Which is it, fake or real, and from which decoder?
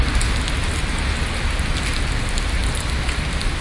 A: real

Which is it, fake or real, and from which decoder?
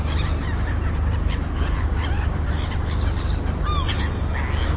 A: real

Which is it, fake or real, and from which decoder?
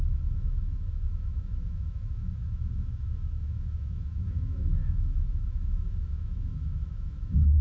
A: fake, autoencoder, DAC-VAE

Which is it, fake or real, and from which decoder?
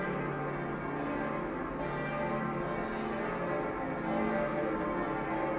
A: real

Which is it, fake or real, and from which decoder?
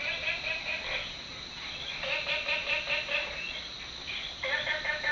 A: real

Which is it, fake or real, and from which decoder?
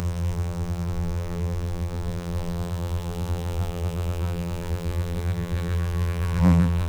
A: fake, vocoder, BigVGAN v2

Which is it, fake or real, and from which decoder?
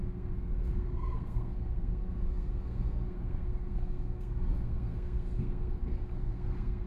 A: fake, codec, SNAC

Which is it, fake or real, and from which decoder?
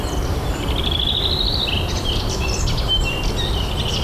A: real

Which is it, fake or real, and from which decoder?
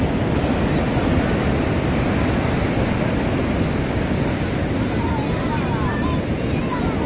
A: real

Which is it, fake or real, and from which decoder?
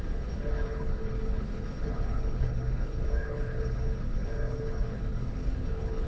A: fake, codec, HILCodec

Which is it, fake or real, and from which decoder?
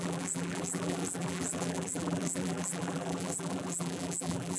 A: fake, vocoder, BigVGAN v2